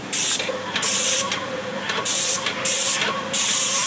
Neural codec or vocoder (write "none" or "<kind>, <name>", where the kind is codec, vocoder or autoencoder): none